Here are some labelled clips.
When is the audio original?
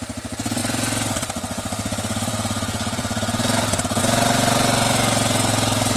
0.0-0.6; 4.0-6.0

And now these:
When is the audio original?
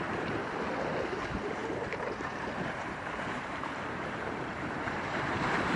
0.4-1.1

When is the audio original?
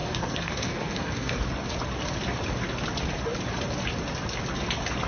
1.4-5.1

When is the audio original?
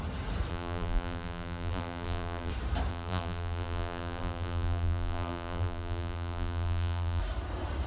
0.0-0.5; 2.5-2.9; 7.2-7.9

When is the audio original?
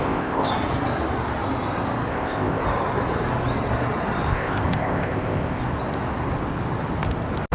0.5-2.1; 2.6-4.3; 5.6-7.5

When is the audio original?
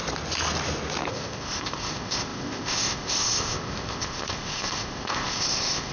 0.0-1.1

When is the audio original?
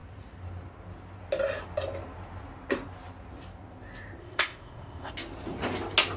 0.0-4.2; 5.1-6.2